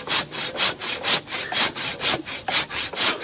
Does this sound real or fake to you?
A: real